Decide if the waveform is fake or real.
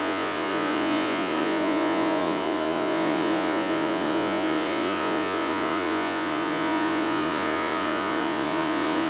fake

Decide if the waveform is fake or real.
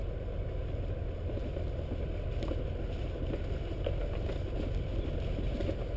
real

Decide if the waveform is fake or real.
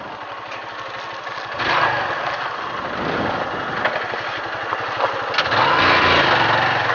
real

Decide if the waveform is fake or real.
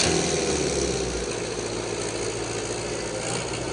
real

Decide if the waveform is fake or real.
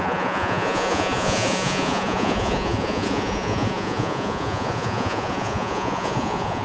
fake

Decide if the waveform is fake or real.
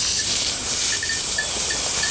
real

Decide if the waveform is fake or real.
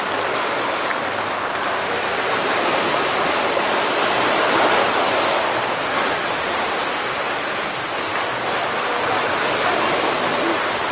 real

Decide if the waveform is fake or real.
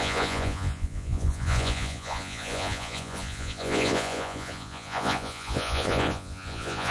fake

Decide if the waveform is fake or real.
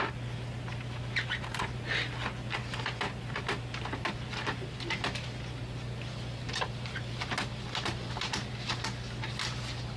real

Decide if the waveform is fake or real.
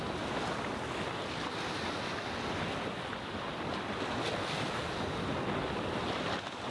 real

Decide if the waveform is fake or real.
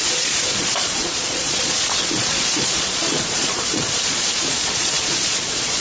fake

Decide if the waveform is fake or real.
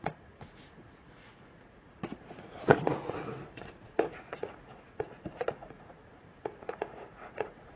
fake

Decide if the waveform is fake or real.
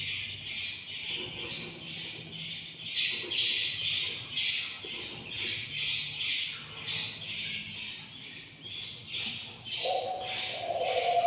real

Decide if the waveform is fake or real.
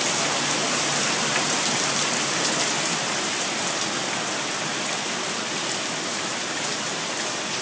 real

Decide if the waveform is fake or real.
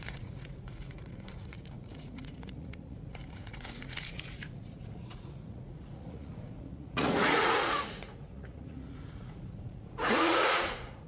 fake